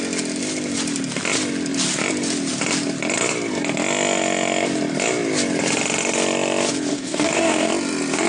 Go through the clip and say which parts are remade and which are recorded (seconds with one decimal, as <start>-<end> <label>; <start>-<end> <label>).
0.0-6.9 recorded; 6.9-7.7 remade; 7.7-8.3 recorded